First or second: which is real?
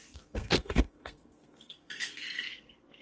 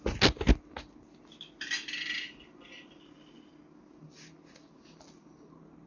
second